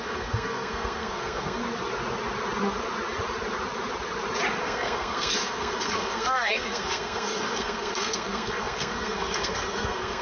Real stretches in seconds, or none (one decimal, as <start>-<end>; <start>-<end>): 1.6-4.6